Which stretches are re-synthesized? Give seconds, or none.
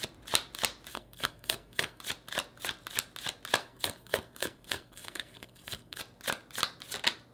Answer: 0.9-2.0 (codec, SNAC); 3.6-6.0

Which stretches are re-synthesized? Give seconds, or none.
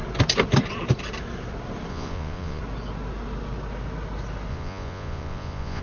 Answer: 1.9-2.6 (vocoder, Vocos); 4.5-5.8